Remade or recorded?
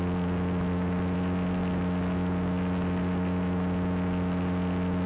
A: recorded